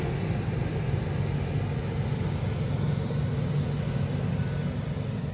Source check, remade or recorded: recorded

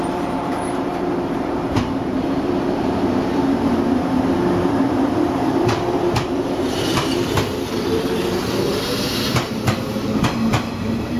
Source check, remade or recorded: remade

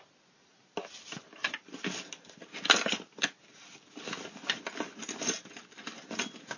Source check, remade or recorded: recorded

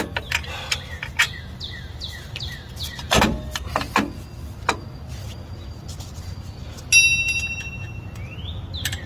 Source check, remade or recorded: recorded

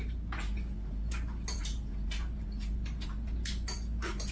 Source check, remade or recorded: recorded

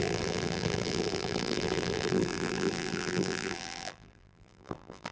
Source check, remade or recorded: remade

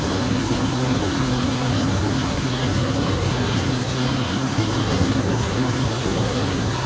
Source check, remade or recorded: remade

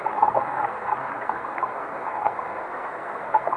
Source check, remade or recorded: remade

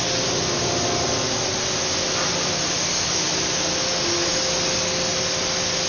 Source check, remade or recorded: recorded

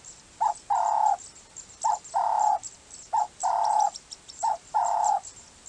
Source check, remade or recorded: recorded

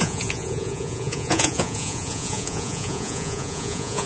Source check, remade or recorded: remade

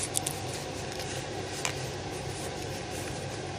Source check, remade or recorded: recorded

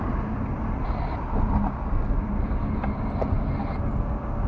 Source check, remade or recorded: recorded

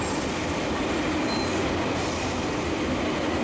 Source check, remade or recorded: recorded